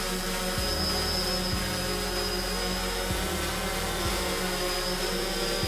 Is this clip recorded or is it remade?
recorded